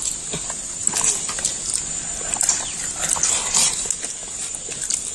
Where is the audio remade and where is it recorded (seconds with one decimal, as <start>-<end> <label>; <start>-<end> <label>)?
0.0-5.1 recorded